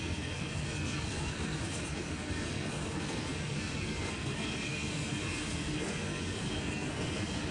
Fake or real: fake